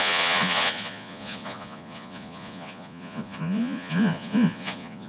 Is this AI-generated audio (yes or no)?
yes